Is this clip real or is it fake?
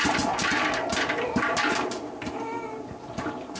real